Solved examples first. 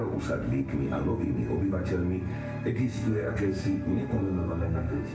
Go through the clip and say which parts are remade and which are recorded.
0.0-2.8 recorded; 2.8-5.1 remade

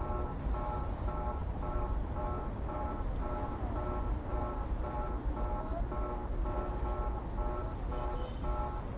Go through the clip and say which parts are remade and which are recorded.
0.0-1.4 recorded; 1.4-2.2 remade; 2.2-4.3 recorded; 4.3-5.1 remade; 5.1-9.0 recorded

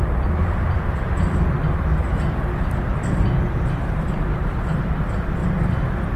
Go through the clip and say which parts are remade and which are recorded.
0.0-2.1 remade; 2.1-3.2 recorded; 3.2-5.4 remade; 5.4-6.2 recorded

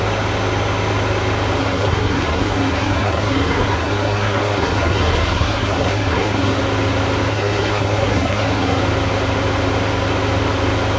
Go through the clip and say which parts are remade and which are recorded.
0.0-1.6 recorded; 1.6-6.6 remade; 6.6-7.3 recorded; 7.3-8.8 remade; 8.8-11.0 recorded

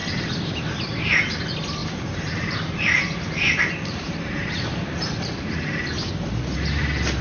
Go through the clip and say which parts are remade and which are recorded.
0.0-1.2 remade; 1.2-1.8 recorded; 1.8-6.1 remade; 6.1-7.2 recorded

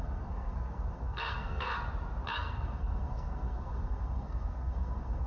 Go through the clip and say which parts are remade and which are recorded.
0.0-1.7 remade; 1.7-2.3 recorded; 2.3-5.3 remade